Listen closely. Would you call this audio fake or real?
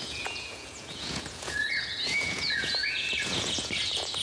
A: fake